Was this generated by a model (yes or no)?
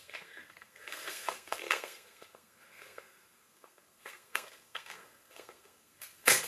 yes